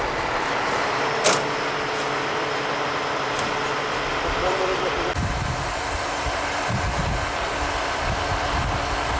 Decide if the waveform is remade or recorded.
recorded